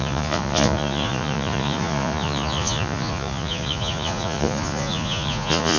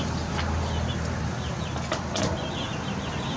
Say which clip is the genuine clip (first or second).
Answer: second